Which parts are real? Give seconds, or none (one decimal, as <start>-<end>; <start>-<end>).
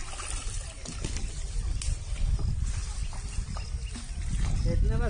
0.0-5.1